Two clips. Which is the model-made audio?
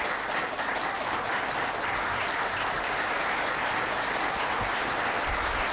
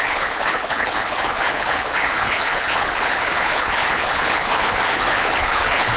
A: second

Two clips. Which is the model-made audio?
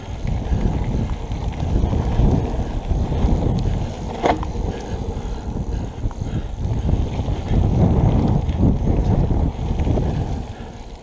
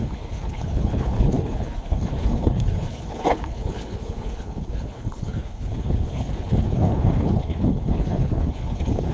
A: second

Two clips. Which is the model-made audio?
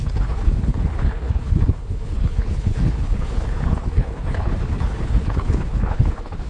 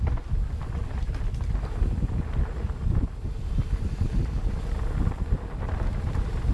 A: first